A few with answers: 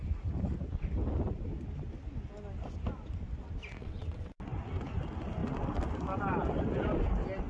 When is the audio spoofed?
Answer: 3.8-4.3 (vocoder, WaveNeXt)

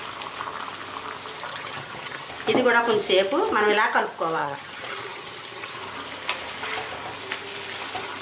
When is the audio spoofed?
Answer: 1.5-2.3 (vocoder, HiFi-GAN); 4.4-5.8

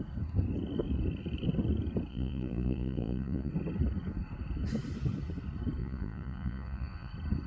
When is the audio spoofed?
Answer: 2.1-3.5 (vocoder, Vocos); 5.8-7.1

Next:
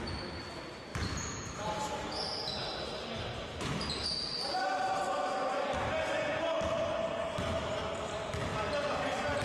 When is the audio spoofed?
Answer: 0.9-2.4 (vocoder, BigVGAN v2)

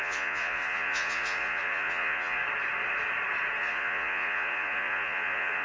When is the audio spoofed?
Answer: 0.0-2.4 (vocoder, Vocos); 3.6-5.6

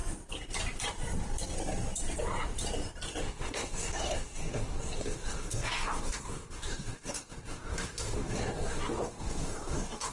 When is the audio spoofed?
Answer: 3.2-10.1 (codec, SNAC)